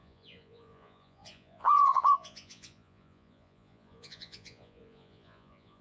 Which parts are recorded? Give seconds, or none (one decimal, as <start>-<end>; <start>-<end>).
none